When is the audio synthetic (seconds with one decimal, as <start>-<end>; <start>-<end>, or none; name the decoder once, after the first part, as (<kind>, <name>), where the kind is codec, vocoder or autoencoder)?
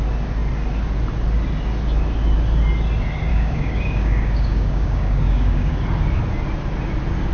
3.3-5.7 (codec, DAC)